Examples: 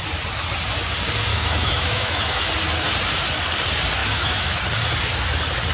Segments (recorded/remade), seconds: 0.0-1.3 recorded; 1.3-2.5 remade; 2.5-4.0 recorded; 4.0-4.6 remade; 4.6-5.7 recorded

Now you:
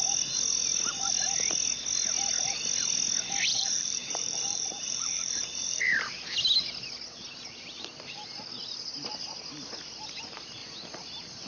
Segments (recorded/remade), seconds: 0.0-3.5 recorded; 3.5-6.1 remade; 6.1-10.6 recorded; 10.6-11.5 remade

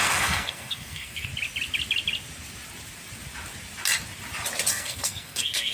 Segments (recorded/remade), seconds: 0.0-1.3 remade; 1.3-4.7 recorded; 4.7-5.7 remade

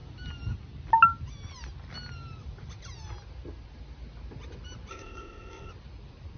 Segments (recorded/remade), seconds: 0.0-4.9 recorded; 4.9-5.7 remade; 5.7-6.4 recorded